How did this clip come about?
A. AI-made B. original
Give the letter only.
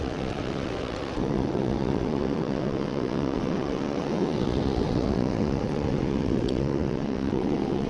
A